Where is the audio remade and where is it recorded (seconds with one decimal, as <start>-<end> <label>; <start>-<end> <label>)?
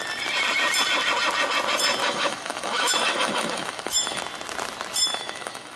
0.0-2.0 recorded; 2.0-4.2 remade; 4.2-5.0 recorded; 5.0-5.8 remade